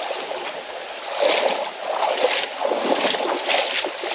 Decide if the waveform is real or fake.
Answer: real